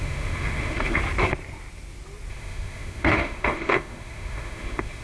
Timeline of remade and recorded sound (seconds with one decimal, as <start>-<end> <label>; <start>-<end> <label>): 0.0-1.0 remade; 1.0-2.3 recorded; 2.3-5.0 remade